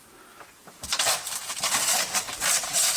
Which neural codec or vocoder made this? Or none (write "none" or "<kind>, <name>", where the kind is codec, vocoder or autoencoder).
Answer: vocoder, BigVGAN v2